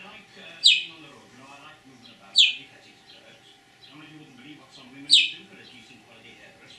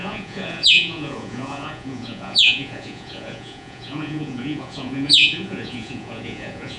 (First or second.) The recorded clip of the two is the first